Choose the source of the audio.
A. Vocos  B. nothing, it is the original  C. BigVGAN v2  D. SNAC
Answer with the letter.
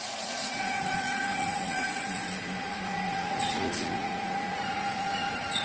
A